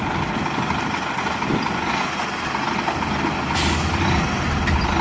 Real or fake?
real